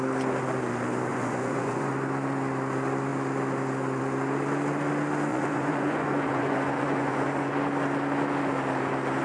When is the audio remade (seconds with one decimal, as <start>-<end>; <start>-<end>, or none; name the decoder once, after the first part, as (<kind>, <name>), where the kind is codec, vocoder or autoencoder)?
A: 1.1-1.9 (vocoder, Vocos); 5.3-7.5